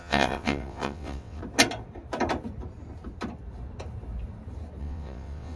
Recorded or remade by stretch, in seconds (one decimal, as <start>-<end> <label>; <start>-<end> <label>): 0.0-1.4 remade; 1.4-4.8 recorded; 4.8-5.6 remade